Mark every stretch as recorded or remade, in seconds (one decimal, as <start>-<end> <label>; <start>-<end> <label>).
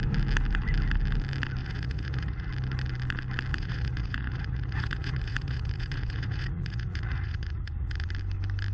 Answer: 0.0-1.6 recorded; 1.6-2.5 remade; 2.5-3.5 recorded; 3.5-8.1 remade; 8.1-8.7 recorded